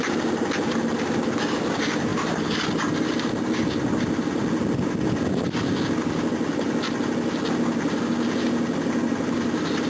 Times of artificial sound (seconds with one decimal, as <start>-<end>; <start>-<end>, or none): none